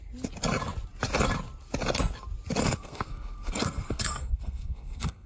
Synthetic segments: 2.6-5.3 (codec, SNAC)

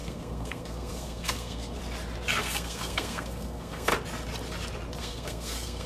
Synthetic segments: 0.0-1.8 (codec, SNAC); 2.4-3.9; 5.0-5.9

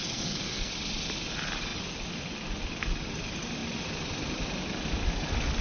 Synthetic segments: 0.0-0.7 (codec, SNAC)